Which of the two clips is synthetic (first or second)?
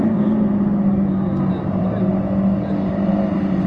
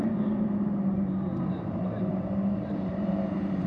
second